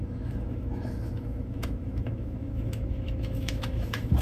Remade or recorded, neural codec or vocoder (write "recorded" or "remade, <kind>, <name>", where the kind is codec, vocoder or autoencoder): remade, autoencoder, DAC-VAE